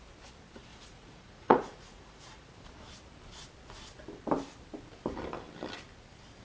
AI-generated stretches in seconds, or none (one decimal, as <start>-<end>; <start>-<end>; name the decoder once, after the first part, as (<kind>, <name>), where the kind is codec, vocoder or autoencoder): 0.7-2.5 (vocoder, Vocos)